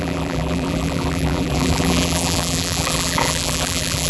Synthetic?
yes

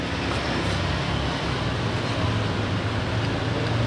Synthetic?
no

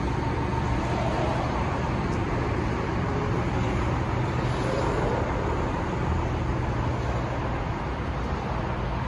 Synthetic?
no